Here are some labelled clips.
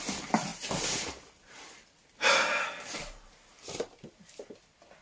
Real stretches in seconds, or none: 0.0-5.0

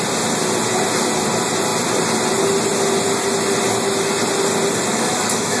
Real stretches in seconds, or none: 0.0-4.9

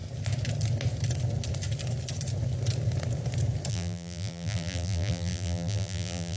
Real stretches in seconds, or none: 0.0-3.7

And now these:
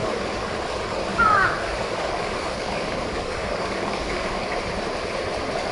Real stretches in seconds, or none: 0.5-1.1; 4.5-5.7

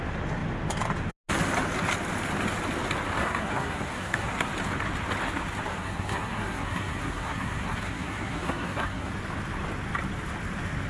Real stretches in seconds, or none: 0.0-3.2; 4.5-5.7; 9.1-10.9

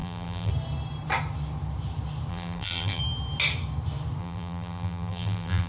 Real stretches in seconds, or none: 0.5-2.3; 3.0-4.2

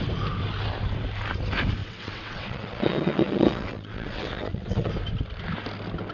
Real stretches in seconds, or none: 0.0-1.8; 4.9-6.1